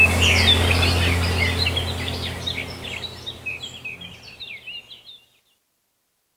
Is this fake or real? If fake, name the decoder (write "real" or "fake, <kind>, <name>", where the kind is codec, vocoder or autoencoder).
real